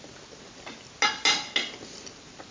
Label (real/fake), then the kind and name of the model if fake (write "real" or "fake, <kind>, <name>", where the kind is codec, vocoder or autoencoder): real